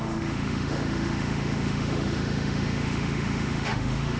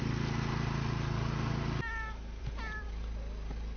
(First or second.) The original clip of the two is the second